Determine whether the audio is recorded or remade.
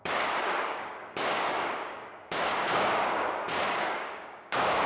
remade